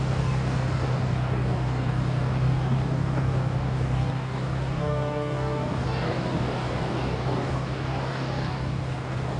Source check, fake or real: fake